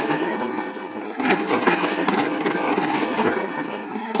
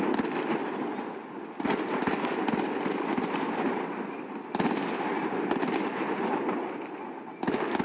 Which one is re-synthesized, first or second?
first